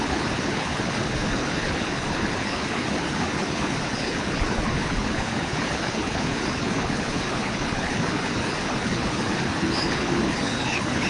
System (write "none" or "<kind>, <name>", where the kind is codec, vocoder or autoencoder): codec, HILCodec